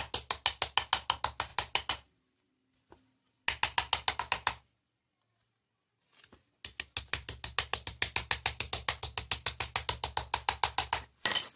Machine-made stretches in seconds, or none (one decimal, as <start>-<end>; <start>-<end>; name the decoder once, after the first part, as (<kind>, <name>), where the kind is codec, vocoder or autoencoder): none